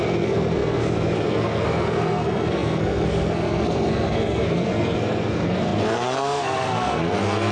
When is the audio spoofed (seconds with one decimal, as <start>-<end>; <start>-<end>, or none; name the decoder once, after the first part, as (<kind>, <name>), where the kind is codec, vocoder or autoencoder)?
0.0-7.5 (codec, SNAC)